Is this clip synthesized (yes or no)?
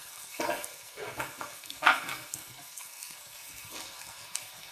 yes